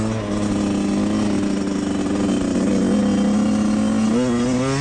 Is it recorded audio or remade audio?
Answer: recorded